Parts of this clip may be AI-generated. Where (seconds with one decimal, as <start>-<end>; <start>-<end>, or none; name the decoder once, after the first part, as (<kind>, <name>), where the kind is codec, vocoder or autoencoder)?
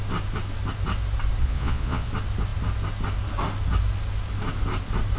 1.4-2.1 (vocoder, Vocos)